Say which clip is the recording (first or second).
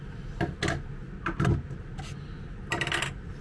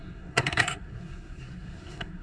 first